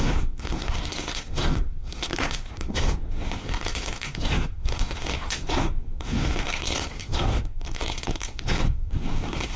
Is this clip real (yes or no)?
no